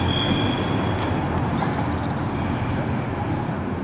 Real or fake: real